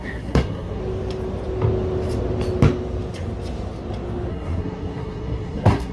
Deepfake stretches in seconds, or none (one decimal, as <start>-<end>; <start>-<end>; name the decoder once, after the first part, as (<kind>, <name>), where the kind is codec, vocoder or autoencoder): 0.0-0.8 (codec, SNAC); 4.3-5.9